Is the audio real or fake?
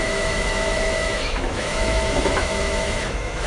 fake